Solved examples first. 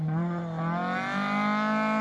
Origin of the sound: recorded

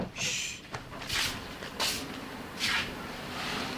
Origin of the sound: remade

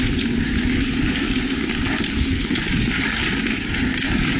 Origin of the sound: recorded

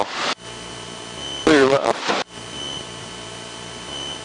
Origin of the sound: remade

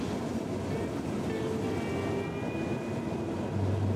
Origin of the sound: recorded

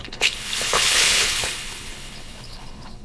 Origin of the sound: remade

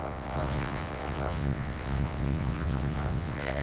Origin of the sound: remade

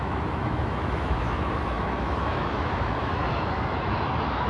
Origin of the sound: remade